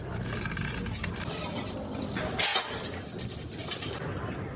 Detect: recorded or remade remade